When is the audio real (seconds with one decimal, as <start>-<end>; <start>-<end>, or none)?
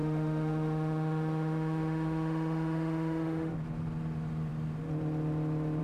3.5-5.8